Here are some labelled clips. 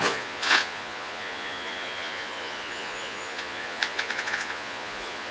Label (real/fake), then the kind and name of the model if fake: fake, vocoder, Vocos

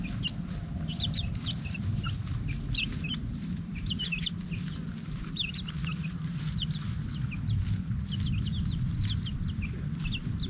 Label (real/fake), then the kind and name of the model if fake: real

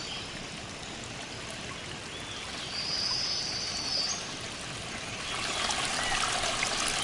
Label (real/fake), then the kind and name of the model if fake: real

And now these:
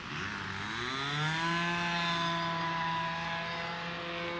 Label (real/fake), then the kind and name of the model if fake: real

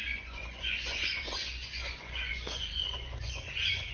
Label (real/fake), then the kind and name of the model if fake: fake, vocoder, Vocos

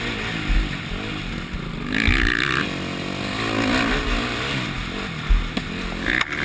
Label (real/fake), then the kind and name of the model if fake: real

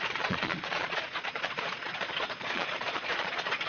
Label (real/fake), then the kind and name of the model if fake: fake, vocoder, Vocos